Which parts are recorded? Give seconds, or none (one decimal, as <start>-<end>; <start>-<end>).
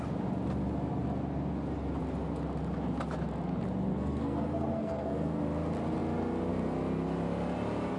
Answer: 0.0-3.9; 5.4-8.0